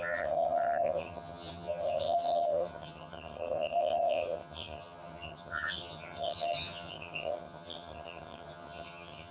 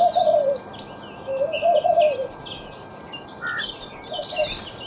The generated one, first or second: first